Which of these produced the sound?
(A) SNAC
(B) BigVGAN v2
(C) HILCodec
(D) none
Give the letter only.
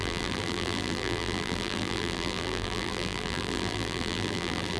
B